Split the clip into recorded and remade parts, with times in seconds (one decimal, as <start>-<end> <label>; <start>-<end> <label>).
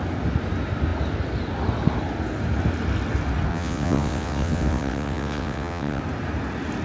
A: 0.0-3.5 recorded; 3.5-6.0 remade; 6.0-6.8 recorded